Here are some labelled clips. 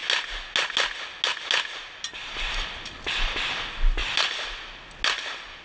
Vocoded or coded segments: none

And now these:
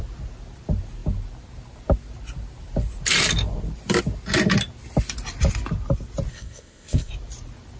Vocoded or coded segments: 6.3-7.1 (codec, ZipCodec)

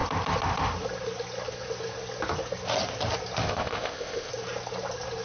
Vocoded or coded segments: 3.4-4.3 (codec, ZipCodec)